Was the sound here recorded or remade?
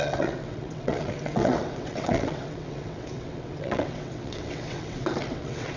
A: remade